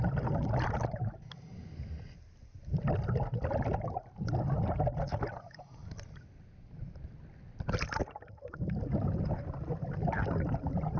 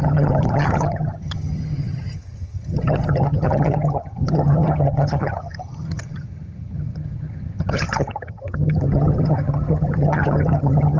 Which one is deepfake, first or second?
second